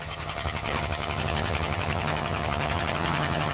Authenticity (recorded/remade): remade